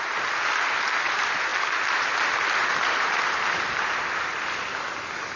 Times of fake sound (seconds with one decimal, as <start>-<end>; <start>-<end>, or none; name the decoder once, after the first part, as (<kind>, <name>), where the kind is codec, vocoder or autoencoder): none